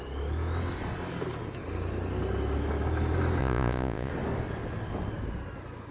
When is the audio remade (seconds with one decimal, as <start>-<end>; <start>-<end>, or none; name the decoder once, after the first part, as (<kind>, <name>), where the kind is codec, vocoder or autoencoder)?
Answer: 3.4-4.1 (vocoder, Vocos)